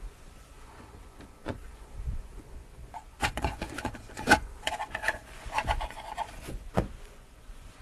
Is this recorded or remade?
remade